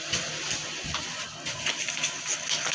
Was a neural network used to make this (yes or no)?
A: no